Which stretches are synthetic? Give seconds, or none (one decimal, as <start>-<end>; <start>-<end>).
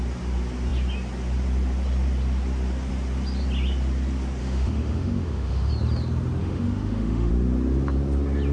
4.4-5.7; 6.4-7.3